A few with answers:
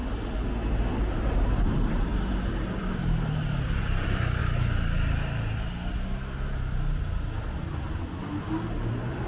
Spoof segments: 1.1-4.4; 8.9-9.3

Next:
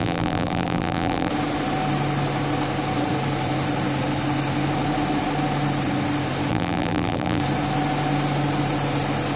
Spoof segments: 0.0-1.3; 6.5-7.4

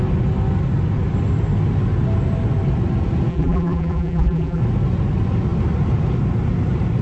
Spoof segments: 3.3-4.6

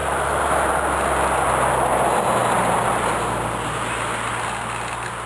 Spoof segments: 0.0-1.5; 2.4-4.3

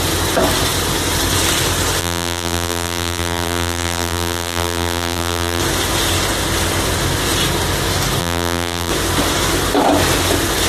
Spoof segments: 2.0-5.6; 8.2-8.9

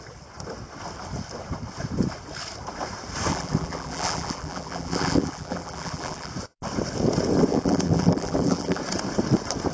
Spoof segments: 3.3-6.3; 7.5-8.8

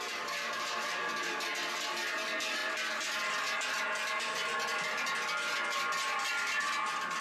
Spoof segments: none

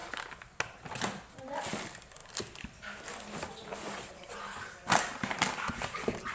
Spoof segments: none